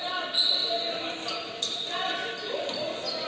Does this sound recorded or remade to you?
recorded